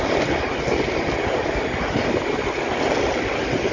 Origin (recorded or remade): recorded